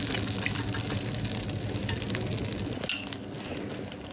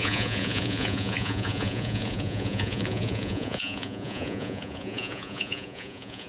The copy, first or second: second